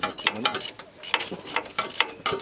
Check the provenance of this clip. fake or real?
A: real